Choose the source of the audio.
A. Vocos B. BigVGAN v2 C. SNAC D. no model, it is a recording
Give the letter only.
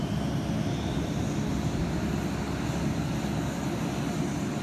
D